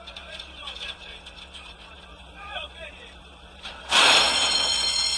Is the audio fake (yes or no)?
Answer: yes